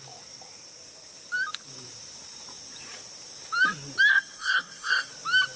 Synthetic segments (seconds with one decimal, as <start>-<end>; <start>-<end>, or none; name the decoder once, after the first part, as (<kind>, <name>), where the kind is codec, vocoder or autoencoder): 4.1-5.1 (codec, SNAC)